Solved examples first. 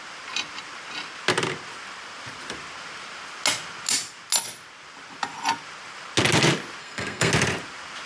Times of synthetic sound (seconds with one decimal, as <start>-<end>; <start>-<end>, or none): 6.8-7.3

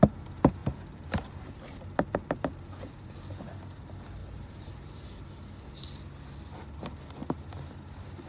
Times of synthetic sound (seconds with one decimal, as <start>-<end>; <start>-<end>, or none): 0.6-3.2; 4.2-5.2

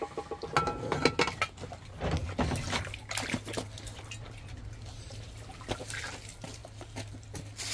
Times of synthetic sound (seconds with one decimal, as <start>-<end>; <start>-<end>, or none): none

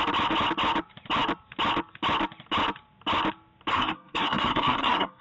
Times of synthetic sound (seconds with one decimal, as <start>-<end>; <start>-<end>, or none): 3.7-5.2